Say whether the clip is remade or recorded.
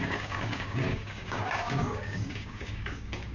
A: remade